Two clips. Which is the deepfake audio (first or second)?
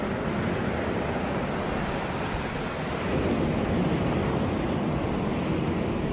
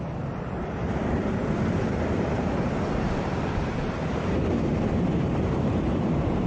second